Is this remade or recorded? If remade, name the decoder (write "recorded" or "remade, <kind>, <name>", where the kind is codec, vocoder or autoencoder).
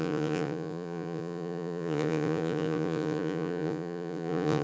remade, vocoder, Vocos